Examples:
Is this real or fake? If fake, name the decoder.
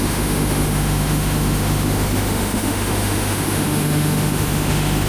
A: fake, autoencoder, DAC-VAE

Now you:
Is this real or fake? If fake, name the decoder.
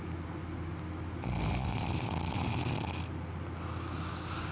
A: real